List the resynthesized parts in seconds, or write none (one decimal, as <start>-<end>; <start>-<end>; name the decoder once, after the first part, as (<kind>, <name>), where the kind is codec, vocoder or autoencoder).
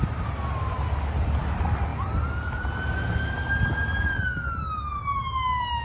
none